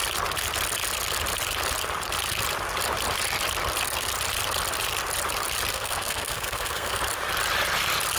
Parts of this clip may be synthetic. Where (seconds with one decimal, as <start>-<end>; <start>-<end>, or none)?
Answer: 5.7-7.0